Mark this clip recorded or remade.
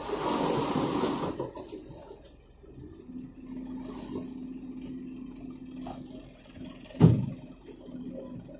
recorded